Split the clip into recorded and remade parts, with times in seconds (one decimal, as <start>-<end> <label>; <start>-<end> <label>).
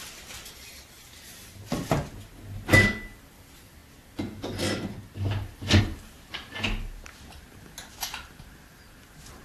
0.0-1.0 recorded; 1.0-1.9 remade; 1.9-9.4 recorded